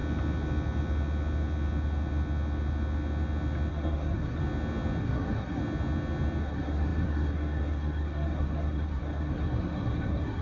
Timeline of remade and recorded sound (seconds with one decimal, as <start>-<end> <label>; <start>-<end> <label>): 0.0-3.7 recorded; 3.7-4.4 remade; 4.4-5.0 recorded; 5.0-5.6 remade; 5.6-6.4 recorded; 6.4-10.4 remade